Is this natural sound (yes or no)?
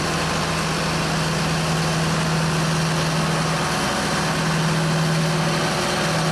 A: yes